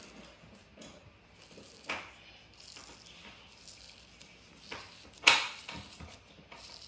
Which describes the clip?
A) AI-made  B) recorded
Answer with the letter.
B